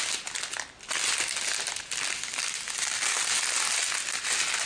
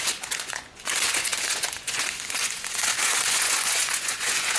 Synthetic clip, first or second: second